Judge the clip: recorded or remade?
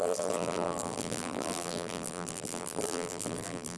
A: remade